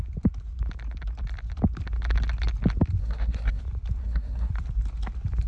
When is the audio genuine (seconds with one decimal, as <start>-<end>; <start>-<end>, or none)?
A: 0.0-3.0; 3.6-4.0; 4.5-5.5